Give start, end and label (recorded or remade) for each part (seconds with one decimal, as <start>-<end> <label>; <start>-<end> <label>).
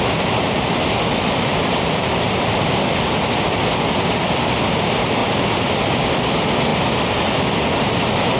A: 0.0-8.4 recorded